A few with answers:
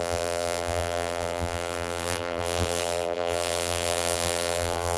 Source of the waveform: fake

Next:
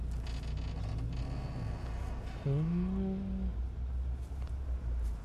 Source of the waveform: real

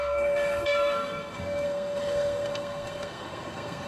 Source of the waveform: fake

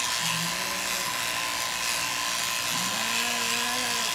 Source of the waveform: real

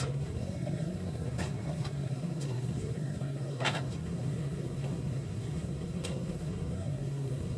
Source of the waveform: fake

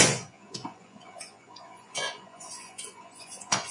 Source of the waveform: fake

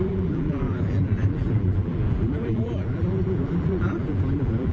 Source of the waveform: fake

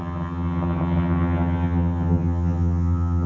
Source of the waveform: fake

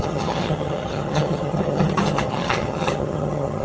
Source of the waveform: fake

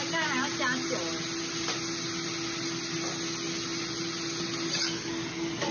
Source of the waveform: real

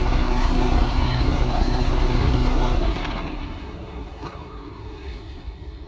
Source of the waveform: fake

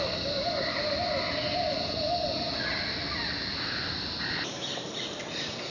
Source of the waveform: real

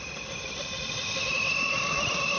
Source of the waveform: real